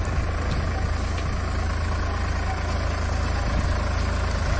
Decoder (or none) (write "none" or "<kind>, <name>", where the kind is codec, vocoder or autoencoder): none